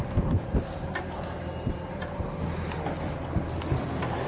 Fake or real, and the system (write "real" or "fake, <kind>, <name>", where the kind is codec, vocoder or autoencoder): real